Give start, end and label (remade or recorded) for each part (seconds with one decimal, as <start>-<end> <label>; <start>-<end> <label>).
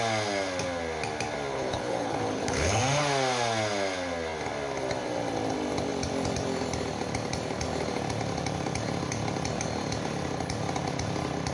0.0-1.5 recorded; 1.5-2.8 remade; 2.8-11.5 recorded